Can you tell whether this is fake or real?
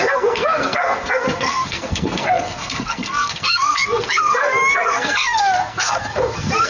fake